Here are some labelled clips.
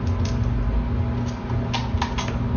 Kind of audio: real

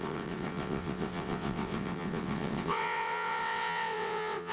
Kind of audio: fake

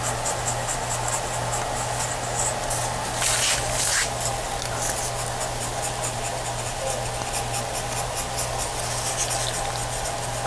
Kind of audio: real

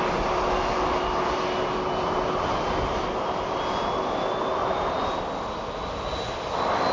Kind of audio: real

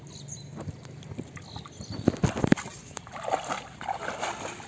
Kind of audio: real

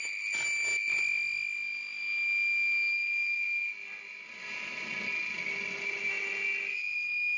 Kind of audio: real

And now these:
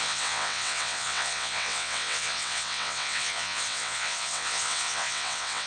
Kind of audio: fake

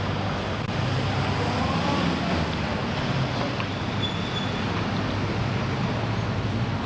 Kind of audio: real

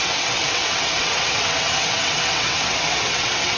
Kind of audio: fake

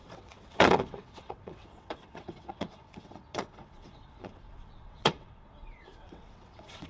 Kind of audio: fake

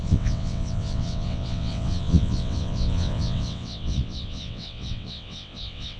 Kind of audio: fake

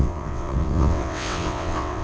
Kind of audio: fake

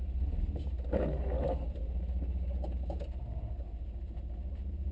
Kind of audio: real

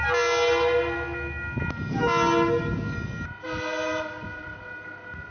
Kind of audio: real